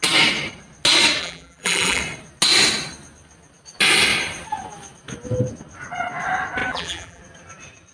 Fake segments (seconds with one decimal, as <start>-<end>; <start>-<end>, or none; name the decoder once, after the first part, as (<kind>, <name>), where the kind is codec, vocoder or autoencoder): 1.2-2.0 (vocoder, BigVGAN v2); 6.7-7.2